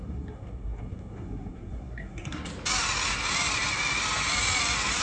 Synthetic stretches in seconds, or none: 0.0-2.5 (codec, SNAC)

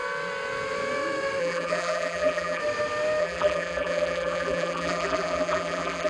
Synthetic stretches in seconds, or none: 1.4-2.6 (vocoder, BigVGAN v2); 3.2-6.1

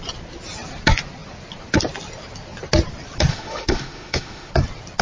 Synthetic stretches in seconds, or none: 3.3-4.5 (autoencoder, DAC-VAE)

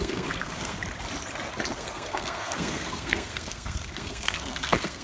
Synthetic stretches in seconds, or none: 0.0-0.8 (codec, SNAC); 1.7-5.0